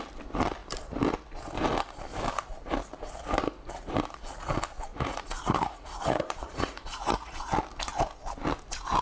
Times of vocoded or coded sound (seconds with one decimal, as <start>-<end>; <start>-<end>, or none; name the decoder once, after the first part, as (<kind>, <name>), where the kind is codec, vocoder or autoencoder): 4.9-7.5 (vocoder, Vocos)